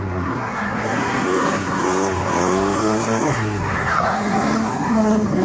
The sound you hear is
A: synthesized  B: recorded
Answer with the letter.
A